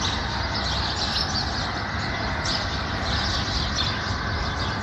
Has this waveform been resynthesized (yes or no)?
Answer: no